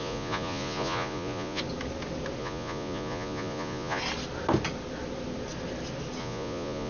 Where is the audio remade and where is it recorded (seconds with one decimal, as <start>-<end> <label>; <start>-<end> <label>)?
0.0-1.6 remade; 1.6-2.4 recorded; 2.4-4.0 remade; 4.0-6.2 recorded; 6.2-6.9 remade